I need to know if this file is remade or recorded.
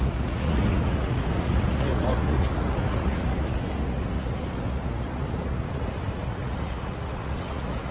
remade